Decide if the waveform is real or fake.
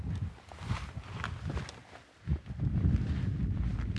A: real